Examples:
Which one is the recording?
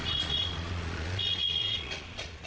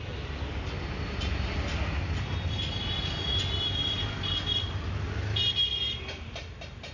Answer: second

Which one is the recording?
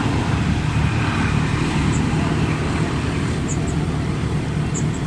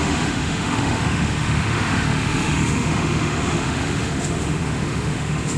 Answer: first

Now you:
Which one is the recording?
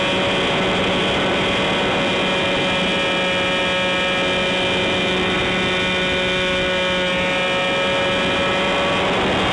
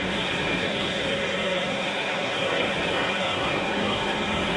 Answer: first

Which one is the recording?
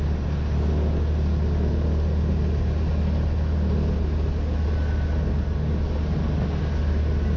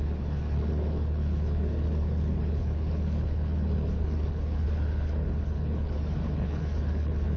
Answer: first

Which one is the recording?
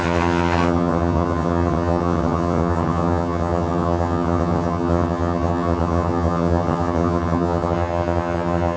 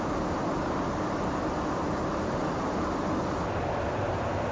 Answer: second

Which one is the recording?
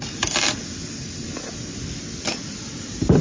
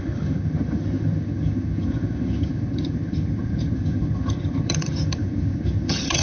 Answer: first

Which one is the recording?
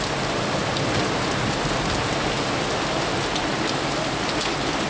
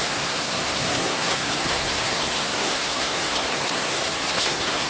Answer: first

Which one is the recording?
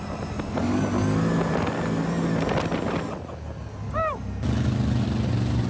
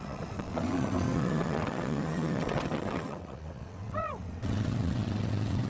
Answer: first